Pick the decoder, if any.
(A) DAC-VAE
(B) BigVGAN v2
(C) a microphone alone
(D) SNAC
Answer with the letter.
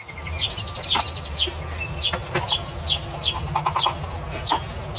C